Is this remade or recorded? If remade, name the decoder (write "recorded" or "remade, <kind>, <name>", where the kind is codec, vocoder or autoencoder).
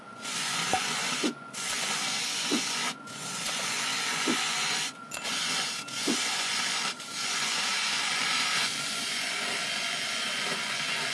remade, vocoder, Vocos